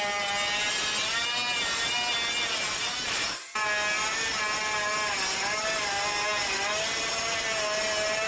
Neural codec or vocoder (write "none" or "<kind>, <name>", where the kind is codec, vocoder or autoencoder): none